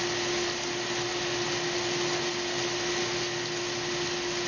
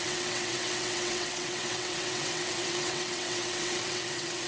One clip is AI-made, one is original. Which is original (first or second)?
first